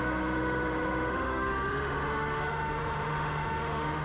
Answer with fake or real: fake